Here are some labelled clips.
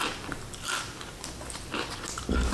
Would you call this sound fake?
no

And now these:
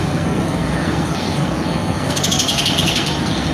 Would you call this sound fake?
yes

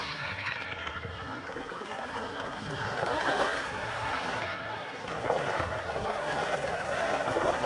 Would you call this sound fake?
yes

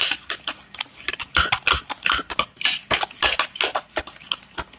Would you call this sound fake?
no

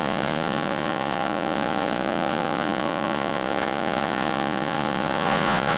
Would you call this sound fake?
yes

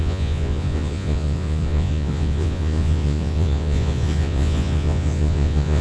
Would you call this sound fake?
yes